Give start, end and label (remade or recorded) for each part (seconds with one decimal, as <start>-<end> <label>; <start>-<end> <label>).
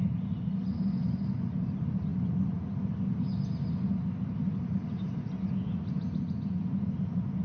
0.0-7.4 recorded